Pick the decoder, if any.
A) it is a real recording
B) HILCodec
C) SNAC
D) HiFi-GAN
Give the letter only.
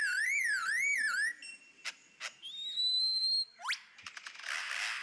A